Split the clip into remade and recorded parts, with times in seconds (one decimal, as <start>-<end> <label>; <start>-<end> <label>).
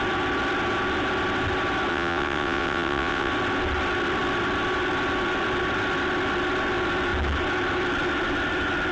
0.0-1.9 recorded; 1.9-3.3 remade; 3.3-8.9 recorded